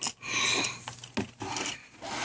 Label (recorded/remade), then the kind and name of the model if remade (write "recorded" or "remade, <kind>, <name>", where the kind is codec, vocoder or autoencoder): recorded